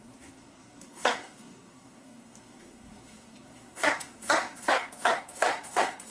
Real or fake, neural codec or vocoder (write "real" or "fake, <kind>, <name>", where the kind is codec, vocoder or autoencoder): fake, codec, SNAC